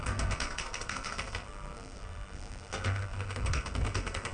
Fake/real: fake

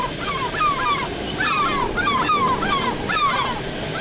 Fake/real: real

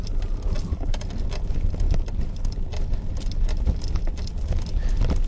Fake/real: real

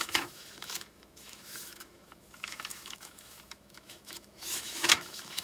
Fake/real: fake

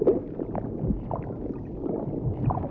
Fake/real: real